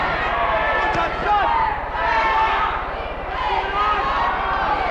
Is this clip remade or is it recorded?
recorded